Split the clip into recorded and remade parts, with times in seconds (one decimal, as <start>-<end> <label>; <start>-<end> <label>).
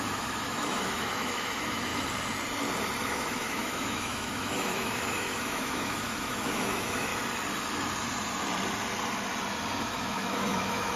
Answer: 0.0-1.9 remade; 1.9-3.1 recorded; 3.1-7.1 remade; 7.1-9.8 recorded; 9.8-11.0 remade